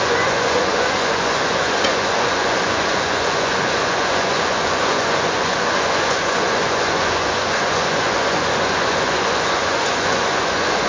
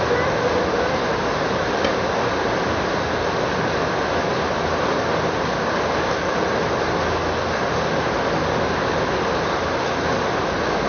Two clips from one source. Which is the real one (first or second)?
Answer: second